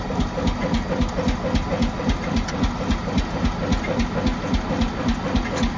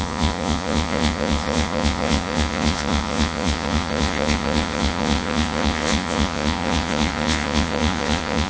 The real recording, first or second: first